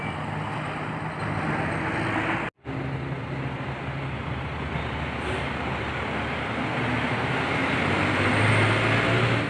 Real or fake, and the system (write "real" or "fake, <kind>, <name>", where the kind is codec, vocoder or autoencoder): real